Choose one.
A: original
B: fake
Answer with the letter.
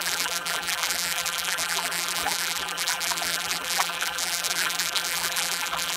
B